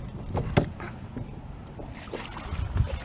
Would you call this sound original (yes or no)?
yes